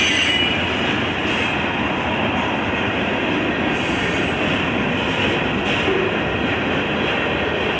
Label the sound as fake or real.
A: real